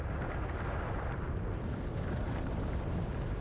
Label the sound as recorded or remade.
recorded